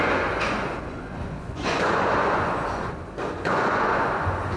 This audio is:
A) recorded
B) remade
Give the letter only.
B